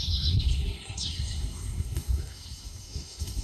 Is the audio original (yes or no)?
no